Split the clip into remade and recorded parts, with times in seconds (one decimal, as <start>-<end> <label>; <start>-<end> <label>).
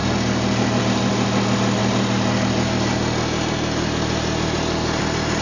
0.0-5.4 recorded